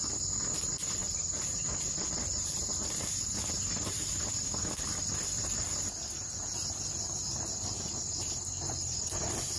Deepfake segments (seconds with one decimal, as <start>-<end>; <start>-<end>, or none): 1.0-4.3